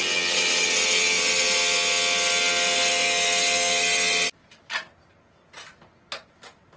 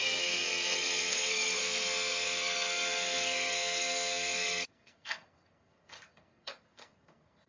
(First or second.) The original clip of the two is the first